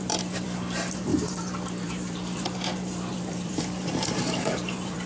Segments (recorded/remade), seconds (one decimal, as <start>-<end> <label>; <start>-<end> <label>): 0.0-5.1 remade